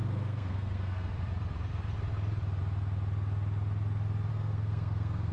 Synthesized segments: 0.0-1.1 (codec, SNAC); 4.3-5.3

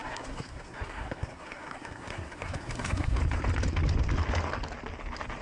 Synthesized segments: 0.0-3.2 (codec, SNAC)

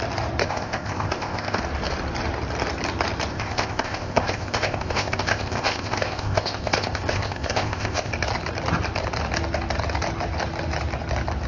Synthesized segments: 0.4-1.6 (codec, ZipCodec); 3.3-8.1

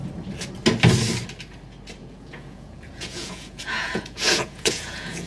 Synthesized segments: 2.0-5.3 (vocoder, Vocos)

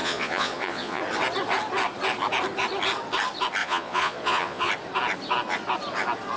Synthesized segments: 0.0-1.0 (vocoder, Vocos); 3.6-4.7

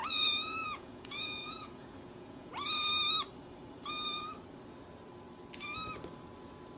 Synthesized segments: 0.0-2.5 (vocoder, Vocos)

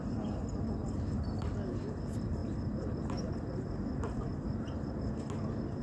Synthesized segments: none

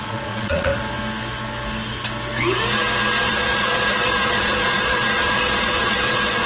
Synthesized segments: 0.0-0.7 (vocoder, Vocos); 3.2-6.5